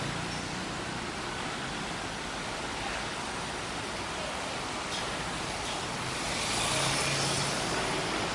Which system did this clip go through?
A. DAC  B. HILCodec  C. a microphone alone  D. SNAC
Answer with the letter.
C